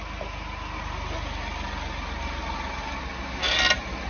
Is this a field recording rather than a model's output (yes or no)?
yes